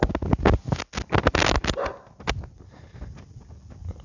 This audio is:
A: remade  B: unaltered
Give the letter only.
B